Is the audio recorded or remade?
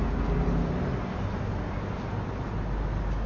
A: recorded